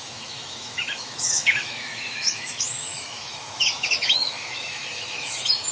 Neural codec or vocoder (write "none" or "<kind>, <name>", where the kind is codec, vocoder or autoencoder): autoencoder, DAC-VAE